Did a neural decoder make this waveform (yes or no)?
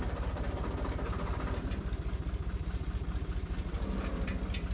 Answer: no